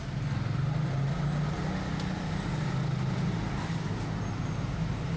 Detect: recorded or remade recorded